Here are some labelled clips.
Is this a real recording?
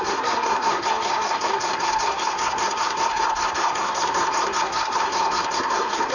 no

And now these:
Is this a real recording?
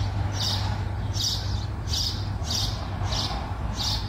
yes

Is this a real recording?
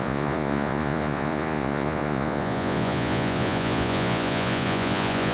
no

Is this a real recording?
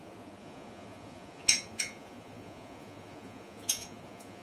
no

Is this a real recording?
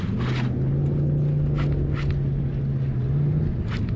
yes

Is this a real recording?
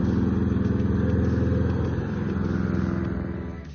yes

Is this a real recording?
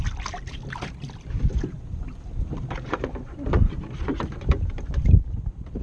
yes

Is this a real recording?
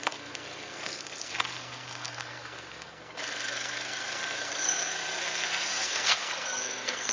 no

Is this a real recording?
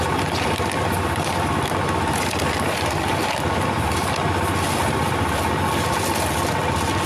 yes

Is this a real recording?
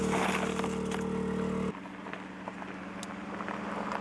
yes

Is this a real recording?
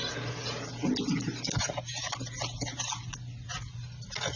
yes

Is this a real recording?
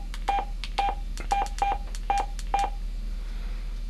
yes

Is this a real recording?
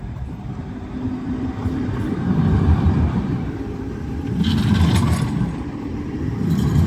no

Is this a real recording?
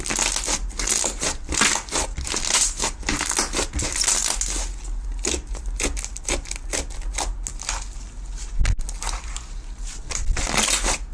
yes